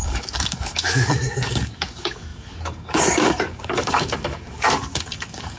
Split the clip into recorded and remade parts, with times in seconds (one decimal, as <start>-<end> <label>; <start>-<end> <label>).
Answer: 0.0-5.6 remade